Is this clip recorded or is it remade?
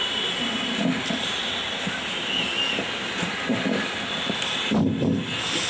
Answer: recorded